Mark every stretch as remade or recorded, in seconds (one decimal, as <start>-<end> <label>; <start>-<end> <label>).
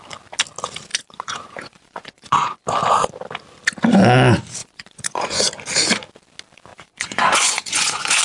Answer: 0.0-0.9 recorded; 0.9-2.6 remade; 2.6-4.6 recorded; 4.6-5.4 remade; 5.4-6.7 recorded; 6.7-8.2 remade